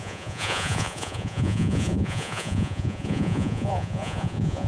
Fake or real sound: fake